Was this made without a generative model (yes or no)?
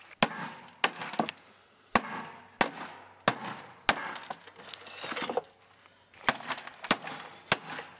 yes